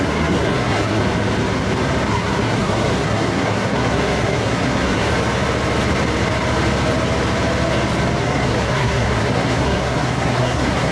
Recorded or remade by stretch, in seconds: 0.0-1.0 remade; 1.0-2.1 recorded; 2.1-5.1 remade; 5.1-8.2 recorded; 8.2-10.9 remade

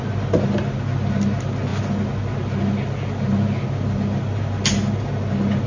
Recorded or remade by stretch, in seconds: 0.0-5.7 recorded

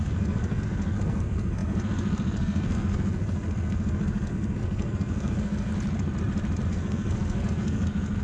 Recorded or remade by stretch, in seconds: 0.0-5.7 remade; 5.7-6.7 recorded; 6.7-8.2 remade